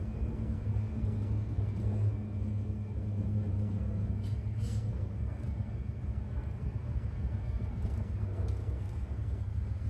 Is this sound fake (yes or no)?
yes